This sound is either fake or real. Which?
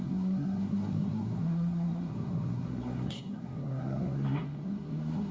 fake